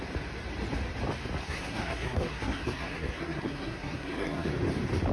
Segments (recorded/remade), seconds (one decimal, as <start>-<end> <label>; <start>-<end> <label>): 0.0-1.4 recorded; 1.4-4.5 remade; 4.5-5.1 recorded